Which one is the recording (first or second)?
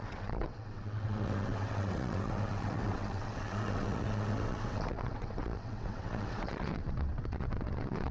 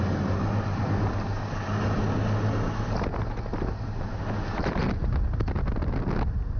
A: second